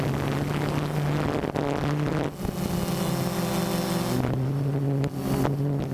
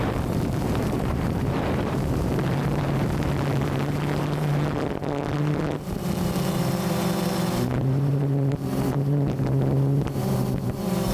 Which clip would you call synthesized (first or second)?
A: second